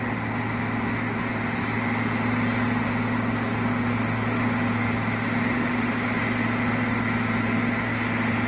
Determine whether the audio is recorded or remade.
recorded